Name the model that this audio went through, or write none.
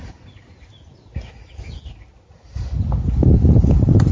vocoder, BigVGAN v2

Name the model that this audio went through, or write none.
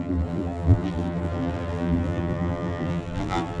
vocoder, BigVGAN v2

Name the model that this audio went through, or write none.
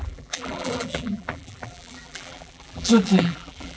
vocoder, BigVGAN v2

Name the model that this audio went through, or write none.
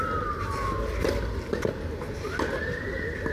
none